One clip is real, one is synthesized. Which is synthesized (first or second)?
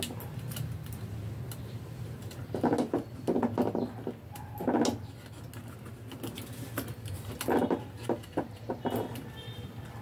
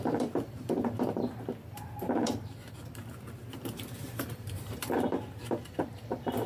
second